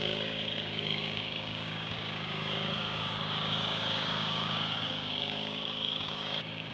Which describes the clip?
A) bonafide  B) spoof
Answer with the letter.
B